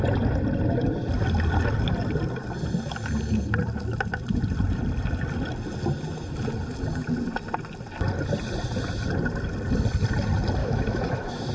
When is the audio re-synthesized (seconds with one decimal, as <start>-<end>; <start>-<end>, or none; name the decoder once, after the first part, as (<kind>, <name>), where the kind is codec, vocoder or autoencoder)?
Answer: 10.6-11.5 (autoencoder, DAC-VAE)

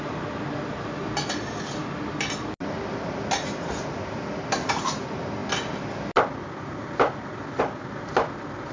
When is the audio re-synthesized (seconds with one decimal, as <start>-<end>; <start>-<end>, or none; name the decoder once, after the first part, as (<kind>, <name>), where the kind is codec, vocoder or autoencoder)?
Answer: none